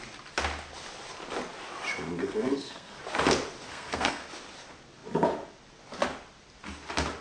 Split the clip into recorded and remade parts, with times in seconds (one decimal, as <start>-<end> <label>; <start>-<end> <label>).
0.0-2.2 recorded; 2.2-3.0 remade; 3.0-3.7 recorded; 3.7-4.2 remade; 4.2-7.2 recorded